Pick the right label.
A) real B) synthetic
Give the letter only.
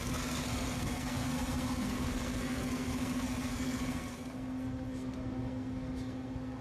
B